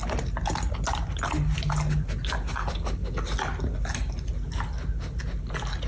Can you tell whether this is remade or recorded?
recorded